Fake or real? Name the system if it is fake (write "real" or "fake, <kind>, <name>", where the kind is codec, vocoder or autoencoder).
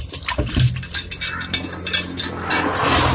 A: real